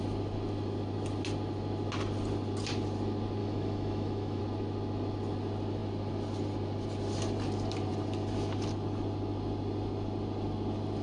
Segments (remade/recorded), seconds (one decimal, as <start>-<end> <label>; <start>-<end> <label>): 0.0-3.4 recorded; 3.4-4.4 remade; 4.4-11.0 recorded